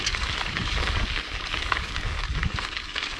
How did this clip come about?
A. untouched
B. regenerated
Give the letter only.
B